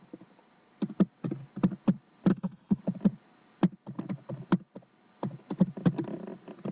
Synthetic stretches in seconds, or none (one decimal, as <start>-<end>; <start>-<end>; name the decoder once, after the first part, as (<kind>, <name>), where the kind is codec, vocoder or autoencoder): 2.3-2.8 (codec, SNAC)